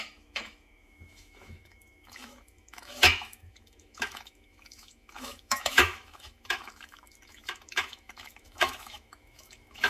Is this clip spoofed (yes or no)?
yes